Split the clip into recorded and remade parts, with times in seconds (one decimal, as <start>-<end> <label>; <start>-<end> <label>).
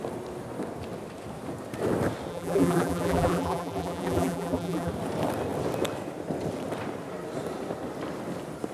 0.0-2.3 recorded; 2.3-4.9 remade; 4.9-8.7 recorded